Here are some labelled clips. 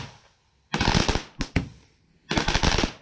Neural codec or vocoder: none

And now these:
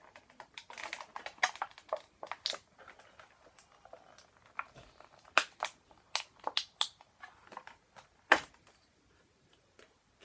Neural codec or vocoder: none